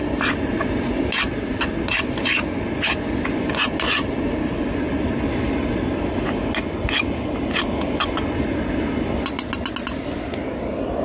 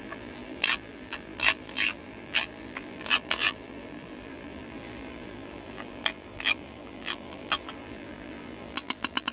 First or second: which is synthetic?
second